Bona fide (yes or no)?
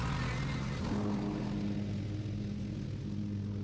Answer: yes